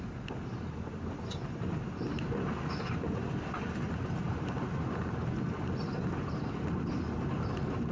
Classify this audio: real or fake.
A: real